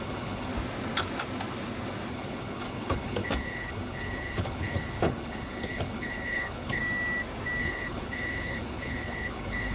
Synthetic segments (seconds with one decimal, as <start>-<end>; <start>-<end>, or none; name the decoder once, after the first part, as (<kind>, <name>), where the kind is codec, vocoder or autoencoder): 0.0-0.5 (codec, HILCodec); 2.1-6.8; 7.6-9.7